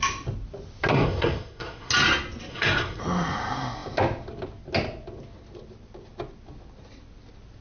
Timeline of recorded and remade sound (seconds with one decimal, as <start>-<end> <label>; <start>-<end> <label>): 0.0-0.9 recorded; 0.9-1.9 remade; 1.9-2.5 recorded; 2.5-3.0 remade; 3.0-7.6 recorded